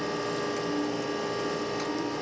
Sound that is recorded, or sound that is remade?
recorded